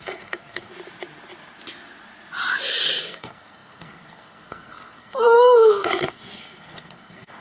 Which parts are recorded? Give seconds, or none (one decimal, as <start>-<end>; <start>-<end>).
0.7-3.0